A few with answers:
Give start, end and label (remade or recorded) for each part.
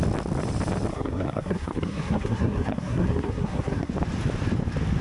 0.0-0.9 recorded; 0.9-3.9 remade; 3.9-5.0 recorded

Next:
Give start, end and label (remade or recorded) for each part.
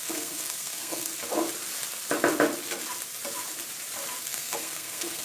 0.0-1.1 remade; 1.1-4.2 recorded; 4.2-5.2 remade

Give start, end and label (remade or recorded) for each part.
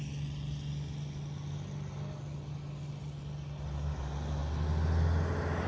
0.0-5.7 recorded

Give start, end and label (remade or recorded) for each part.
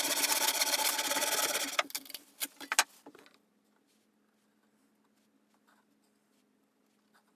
0.0-7.4 recorded